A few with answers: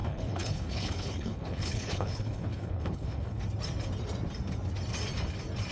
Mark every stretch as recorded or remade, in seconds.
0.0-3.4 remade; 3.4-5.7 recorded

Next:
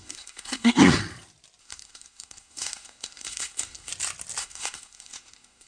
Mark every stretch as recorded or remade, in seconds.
0.0-1.0 remade; 1.0-1.6 recorded; 1.6-3.9 remade; 3.9-4.4 recorded; 4.4-5.7 remade

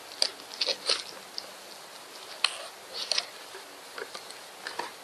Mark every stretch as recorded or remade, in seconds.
0.0-5.0 recorded

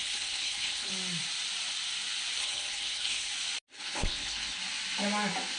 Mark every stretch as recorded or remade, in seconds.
0.0-0.9 remade; 0.9-2.4 recorded; 2.4-3.3 remade; 3.3-3.7 recorded; 3.7-4.6 remade; 4.6-5.6 recorded

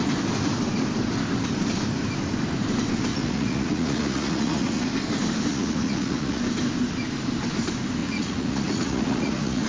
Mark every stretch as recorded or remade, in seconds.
0.0-3.1 recorded; 3.1-4.9 remade; 4.9-5.5 recorded; 5.5-6.4 remade; 6.4-8.0 recorded; 8.0-9.7 remade